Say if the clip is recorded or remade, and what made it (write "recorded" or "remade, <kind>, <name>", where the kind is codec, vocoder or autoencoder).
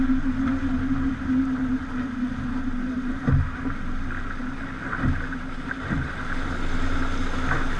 recorded